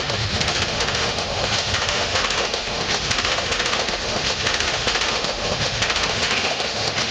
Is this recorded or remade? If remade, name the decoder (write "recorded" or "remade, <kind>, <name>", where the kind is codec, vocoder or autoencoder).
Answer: remade, autoencoder, DAC-VAE